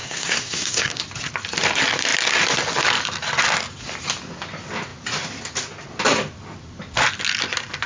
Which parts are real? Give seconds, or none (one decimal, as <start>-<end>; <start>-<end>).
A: 1.0-7.9